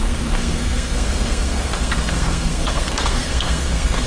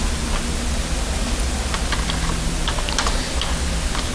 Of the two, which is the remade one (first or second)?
first